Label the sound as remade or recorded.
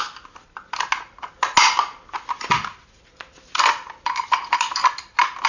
recorded